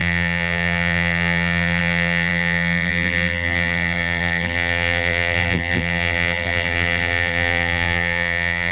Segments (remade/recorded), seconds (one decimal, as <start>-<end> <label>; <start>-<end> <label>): 0.0-8.7 remade